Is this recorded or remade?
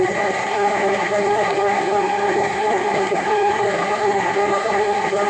remade